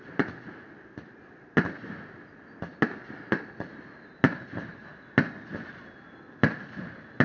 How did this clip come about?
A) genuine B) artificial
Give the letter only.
A